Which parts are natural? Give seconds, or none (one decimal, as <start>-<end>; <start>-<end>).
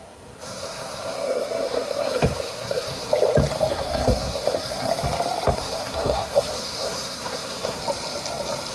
3.1-3.7; 4.9-5.5; 7.8-8.7